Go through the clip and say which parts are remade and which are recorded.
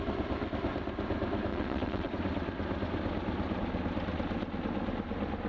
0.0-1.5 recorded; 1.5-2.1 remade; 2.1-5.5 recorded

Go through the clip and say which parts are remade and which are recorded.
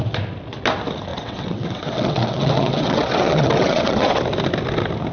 0.0-1.1 recorded; 1.1-4.2 remade; 4.2-5.1 recorded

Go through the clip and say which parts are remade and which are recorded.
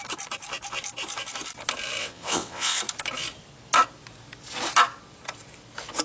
0.0-2.0 recorded; 2.0-2.8 remade; 2.8-6.0 recorded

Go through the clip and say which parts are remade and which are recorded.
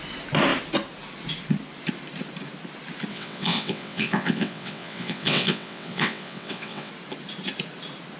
0.0-3.1 recorded; 3.1-6.9 remade; 6.9-8.2 recorded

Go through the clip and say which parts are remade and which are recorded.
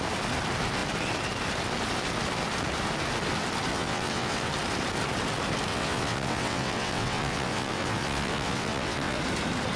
0.0-3.7 recorded; 3.7-4.5 remade; 4.5-5.7 recorded; 5.7-9.2 remade; 9.2-9.8 recorded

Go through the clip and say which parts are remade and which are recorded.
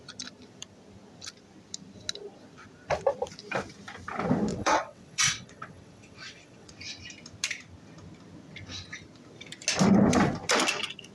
0.0-4.5 recorded; 4.5-6.7 remade; 6.7-11.1 recorded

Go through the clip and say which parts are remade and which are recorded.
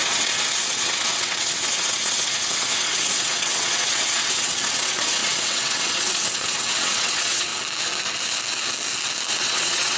0.0-7.5 remade; 7.5-9.3 recorded; 9.3-10.0 remade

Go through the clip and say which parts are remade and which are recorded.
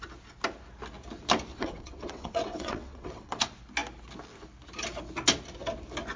0.0-1.5 recorded; 1.5-3.4 remade; 3.4-6.2 recorded